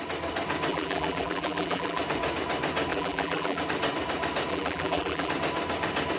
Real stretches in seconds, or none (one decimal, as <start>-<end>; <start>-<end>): 0.0-0.7; 2.0-2.9; 3.6-4.5; 5.3-6.2